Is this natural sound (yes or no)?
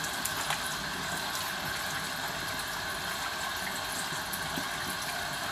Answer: yes